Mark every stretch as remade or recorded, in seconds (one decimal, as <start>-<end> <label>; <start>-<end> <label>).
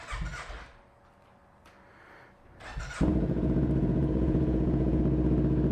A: 0.0-3.1 recorded; 3.1-5.0 remade; 5.0-5.7 recorded